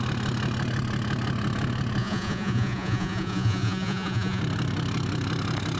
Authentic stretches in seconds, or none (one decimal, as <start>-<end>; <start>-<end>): 0.0-2.0; 4.4-5.8